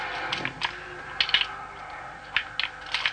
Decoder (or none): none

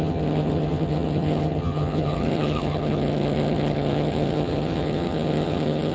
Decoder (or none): vocoder, HiFi-GAN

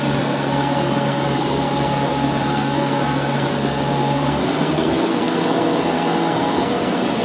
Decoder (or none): codec, SNAC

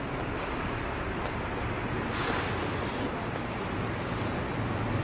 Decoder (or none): vocoder, BigVGAN v2